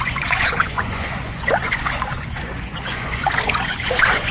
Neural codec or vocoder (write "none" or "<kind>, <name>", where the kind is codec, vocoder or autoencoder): vocoder, Vocos